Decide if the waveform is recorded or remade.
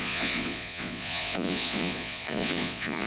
remade